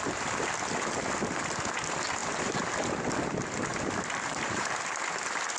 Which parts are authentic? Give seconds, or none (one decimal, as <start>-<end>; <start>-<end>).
0.0-2.2; 2.9-3.7; 4.8-5.6